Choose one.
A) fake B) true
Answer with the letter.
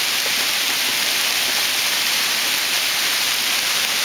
B